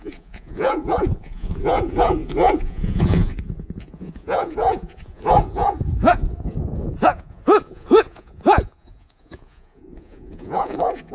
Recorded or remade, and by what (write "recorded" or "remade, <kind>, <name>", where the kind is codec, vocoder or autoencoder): remade, vocoder, Vocos